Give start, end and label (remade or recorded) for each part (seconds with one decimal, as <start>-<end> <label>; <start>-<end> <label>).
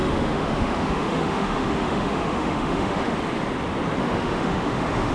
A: 0.0-3.1 remade; 3.1-4.0 recorded; 4.0-5.1 remade